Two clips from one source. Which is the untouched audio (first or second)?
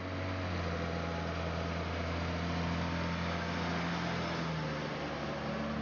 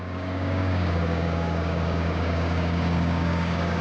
first